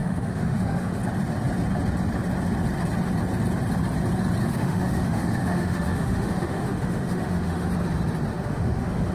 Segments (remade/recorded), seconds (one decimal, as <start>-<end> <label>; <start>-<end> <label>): 0.0-1.0 remade; 1.0-4.4 recorded; 4.4-7.7 remade; 7.7-8.3 recorded; 8.3-9.1 remade